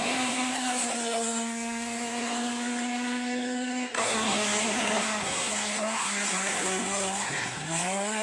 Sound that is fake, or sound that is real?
fake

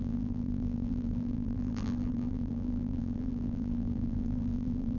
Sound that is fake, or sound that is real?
fake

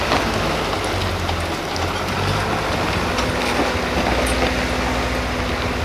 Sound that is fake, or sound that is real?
real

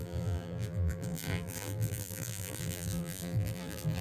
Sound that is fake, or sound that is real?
fake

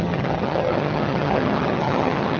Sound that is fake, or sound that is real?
fake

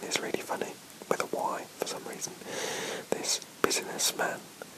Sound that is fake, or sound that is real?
real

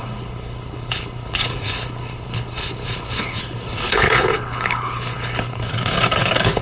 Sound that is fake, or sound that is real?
fake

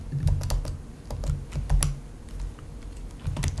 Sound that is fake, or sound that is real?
real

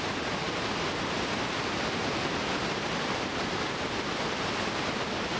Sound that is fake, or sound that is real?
real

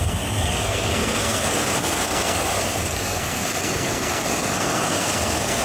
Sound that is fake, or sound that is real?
fake